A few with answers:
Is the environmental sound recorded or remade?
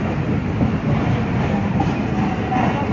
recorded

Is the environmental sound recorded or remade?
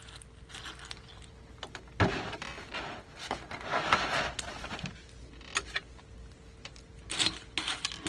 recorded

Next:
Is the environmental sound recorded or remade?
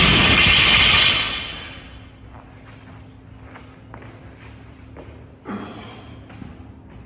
recorded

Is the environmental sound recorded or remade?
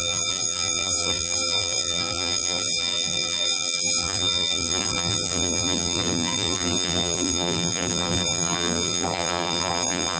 remade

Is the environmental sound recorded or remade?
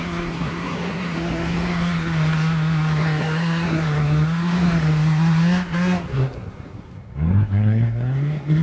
remade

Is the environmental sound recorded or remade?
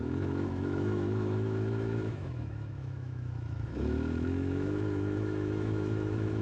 remade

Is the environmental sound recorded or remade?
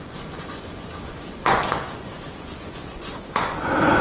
remade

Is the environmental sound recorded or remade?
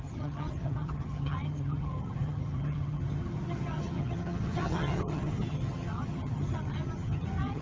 remade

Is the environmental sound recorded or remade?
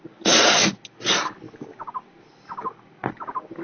recorded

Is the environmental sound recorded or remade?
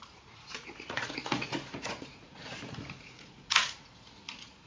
remade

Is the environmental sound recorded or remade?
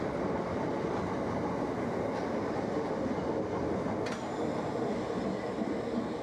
recorded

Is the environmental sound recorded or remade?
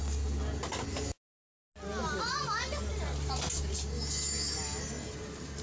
recorded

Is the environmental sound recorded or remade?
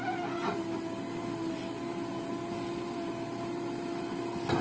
recorded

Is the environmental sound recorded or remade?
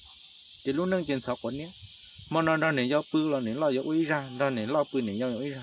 recorded